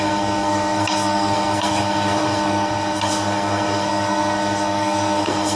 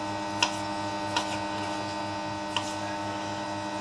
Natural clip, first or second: second